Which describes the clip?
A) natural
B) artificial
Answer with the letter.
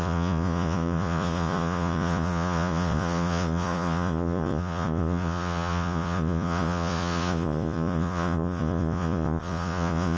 B